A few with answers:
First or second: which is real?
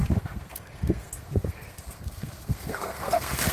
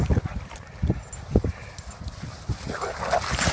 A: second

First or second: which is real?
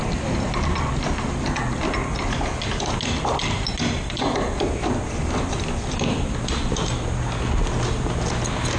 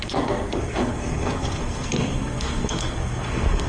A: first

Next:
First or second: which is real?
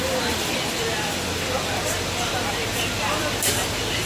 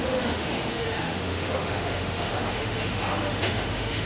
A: first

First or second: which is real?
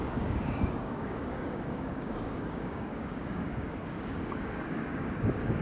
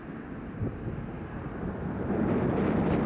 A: second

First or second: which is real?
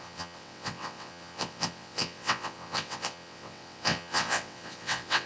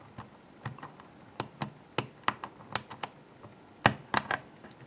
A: second